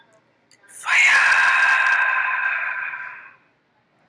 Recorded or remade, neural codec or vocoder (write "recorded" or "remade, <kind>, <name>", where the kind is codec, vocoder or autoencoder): recorded